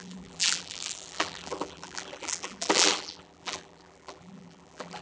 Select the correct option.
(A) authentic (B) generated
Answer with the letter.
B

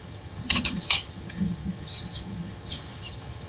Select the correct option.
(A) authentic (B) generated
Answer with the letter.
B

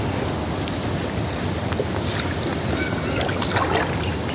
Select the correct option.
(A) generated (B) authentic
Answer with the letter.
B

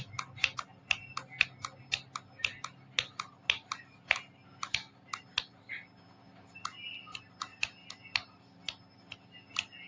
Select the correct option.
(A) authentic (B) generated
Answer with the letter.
A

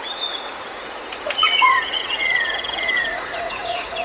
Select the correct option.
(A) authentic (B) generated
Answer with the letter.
B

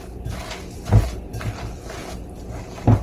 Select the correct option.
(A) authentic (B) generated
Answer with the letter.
A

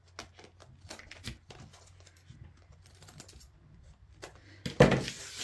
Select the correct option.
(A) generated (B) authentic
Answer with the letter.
B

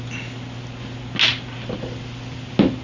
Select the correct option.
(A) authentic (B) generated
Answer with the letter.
A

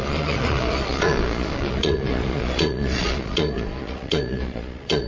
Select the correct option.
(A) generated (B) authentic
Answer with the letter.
A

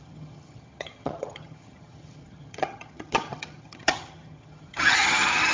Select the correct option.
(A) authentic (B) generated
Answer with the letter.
B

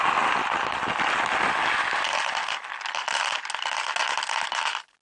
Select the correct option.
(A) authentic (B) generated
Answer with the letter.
A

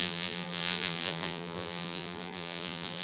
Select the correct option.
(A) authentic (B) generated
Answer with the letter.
B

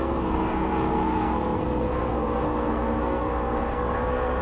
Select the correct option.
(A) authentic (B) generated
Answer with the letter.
B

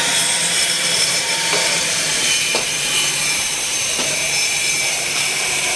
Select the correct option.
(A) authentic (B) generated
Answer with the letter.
B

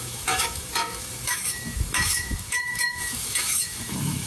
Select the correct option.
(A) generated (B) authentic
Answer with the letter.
A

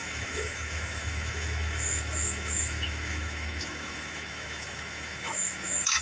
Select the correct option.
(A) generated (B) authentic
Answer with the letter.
A